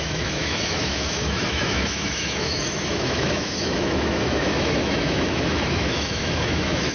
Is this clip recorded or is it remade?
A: remade